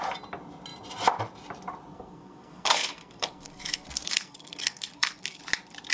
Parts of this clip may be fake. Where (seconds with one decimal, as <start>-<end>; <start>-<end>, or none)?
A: 1.9-5.4